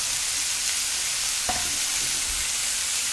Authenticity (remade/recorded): recorded